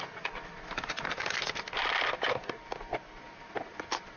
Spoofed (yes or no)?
no